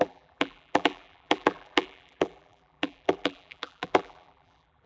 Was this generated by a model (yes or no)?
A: yes